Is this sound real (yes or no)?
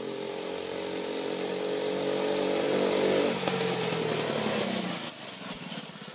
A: yes